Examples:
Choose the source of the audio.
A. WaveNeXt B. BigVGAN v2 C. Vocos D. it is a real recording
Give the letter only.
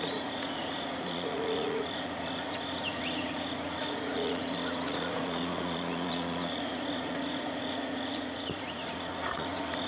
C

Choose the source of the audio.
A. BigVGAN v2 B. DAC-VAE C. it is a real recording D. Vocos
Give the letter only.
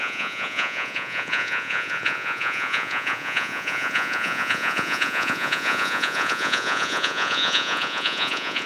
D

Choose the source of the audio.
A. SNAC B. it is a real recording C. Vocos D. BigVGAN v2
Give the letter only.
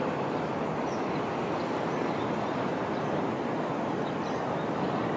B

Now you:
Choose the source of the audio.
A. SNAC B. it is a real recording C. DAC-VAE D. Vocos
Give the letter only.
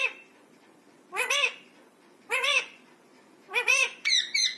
D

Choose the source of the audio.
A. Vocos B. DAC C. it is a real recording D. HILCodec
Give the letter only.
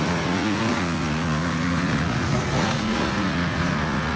A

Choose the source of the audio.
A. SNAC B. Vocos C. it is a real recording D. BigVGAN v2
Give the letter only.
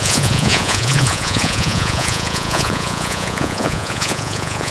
B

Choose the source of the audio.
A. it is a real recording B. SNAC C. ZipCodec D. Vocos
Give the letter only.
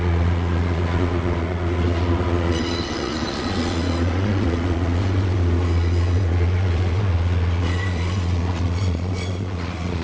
D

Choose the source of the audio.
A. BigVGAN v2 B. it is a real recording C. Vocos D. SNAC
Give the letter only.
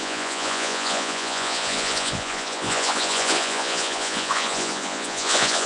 C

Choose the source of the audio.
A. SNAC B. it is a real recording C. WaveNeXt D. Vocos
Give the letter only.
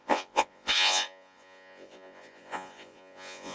D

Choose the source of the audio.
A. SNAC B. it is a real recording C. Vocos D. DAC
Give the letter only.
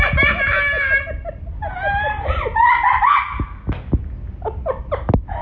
B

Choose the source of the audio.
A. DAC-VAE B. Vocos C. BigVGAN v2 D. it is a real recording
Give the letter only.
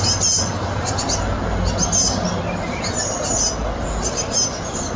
D